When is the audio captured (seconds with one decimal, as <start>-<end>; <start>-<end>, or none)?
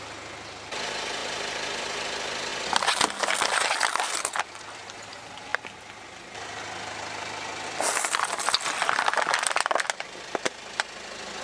0.0-11.4